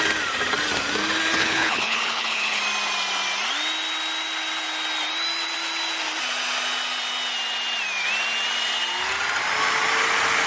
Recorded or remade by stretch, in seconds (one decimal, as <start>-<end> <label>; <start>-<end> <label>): 0.0-1.4 recorded; 1.4-2.6 remade; 2.6-10.5 recorded